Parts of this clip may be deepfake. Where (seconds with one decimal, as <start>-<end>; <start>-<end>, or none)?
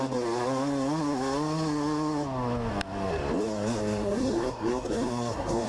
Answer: 3.8-5.7